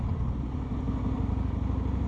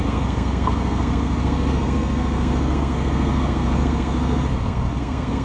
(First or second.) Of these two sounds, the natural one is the first